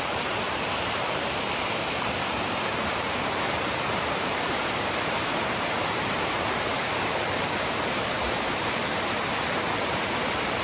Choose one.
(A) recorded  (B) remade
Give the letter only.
B